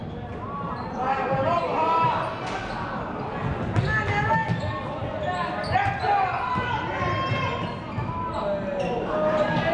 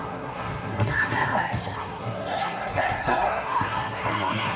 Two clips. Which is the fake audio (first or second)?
second